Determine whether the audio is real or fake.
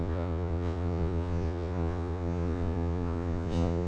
fake